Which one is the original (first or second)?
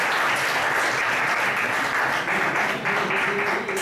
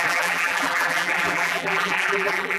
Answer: first